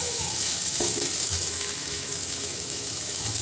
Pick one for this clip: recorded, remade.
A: remade